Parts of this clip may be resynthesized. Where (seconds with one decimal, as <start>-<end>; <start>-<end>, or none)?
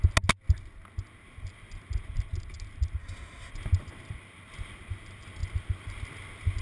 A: 3.0-3.5